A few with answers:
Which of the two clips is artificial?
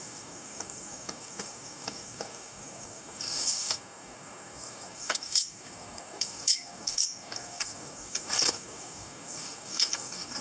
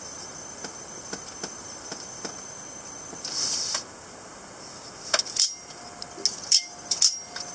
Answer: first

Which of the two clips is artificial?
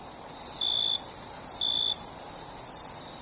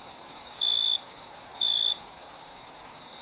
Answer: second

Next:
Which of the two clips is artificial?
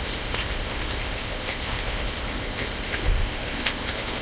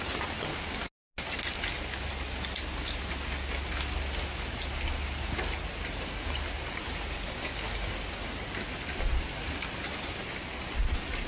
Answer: first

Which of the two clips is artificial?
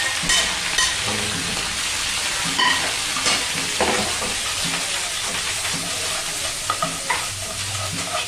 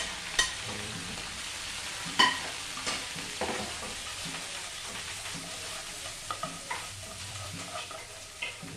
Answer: second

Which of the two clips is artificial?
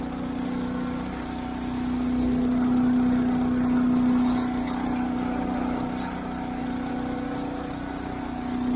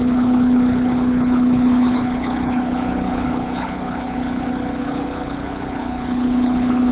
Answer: second